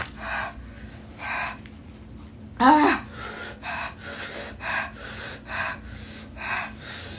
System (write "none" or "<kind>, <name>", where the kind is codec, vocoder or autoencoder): none